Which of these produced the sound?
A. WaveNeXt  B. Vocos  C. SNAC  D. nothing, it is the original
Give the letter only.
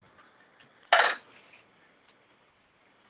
D